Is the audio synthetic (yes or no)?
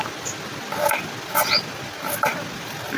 no